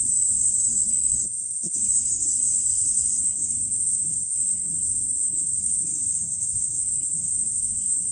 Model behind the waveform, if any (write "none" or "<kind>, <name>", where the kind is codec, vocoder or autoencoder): codec, SNAC